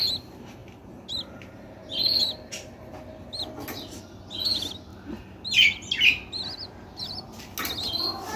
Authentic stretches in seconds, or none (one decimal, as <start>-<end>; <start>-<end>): 0.0-8.4